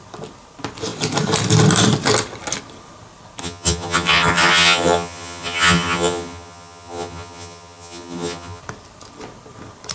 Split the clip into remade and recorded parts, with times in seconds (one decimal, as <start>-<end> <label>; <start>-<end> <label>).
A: 0.0-3.4 recorded; 3.4-8.6 remade; 8.6-9.9 recorded

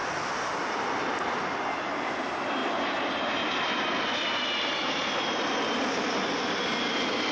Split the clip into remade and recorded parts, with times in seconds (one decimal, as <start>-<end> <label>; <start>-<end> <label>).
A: 0.0-7.3 recorded

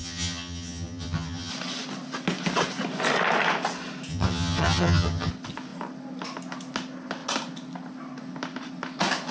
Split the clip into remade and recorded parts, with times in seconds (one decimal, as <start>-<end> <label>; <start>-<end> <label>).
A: 0.0-1.5 remade; 1.5-4.1 recorded; 4.1-5.3 remade; 5.3-9.3 recorded

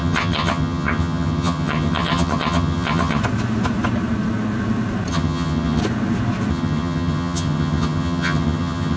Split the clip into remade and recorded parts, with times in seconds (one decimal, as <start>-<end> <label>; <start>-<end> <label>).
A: 0.0-3.2 remade; 3.2-5.1 recorded; 5.1-5.8 remade; 5.8-6.5 recorded; 6.5-9.0 remade

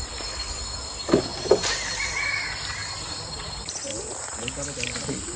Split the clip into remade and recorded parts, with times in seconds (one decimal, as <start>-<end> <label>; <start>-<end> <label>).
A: 0.0-5.4 recorded

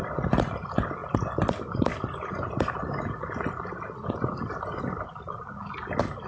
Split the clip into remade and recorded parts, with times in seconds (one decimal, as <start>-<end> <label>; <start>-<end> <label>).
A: 0.0-6.3 recorded